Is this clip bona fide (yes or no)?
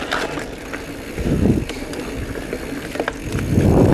yes